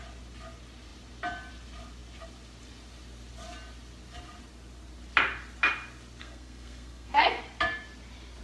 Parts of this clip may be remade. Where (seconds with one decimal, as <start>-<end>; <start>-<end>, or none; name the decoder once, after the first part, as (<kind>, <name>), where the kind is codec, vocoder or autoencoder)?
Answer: 6.2-7.4 (codec, SNAC)